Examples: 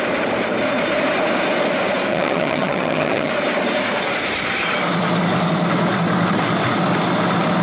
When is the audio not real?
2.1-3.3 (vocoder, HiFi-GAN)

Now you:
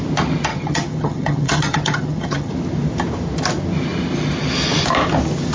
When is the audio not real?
0.5-2.5 (vocoder, HiFi-GAN)

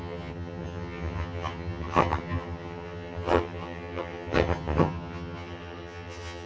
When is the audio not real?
0.0-6.5 (vocoder, HiFi-GAN)

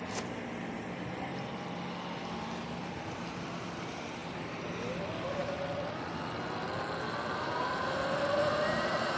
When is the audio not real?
none